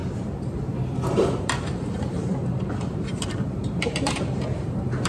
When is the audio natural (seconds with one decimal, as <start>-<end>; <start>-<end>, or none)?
0.0-1.4